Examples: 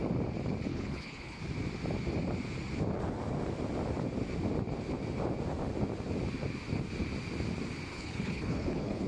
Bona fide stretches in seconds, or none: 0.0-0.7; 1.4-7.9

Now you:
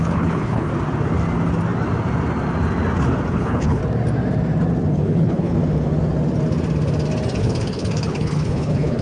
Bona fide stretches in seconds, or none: 0.7-3.3; 3.8-4.9; 5.5-7.4

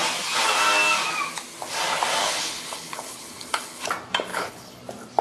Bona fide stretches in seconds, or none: 0.0-2.2; 3.9-4.3; 4.8-5.2

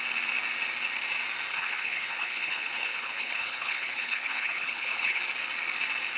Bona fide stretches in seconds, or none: 0.0-1.5; 5.2-6.2

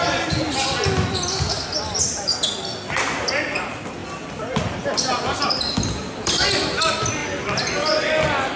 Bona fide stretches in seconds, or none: 0.0-8.6

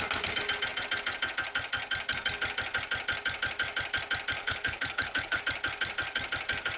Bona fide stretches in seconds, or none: 0.0-4.4; 5.4-6.8

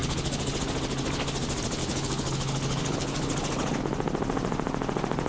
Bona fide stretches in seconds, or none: 0.6-1.8; 3.8-5.3

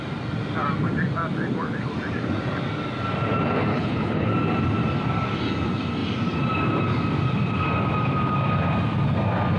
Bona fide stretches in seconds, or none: 0.0-3.7; 4.3-9.6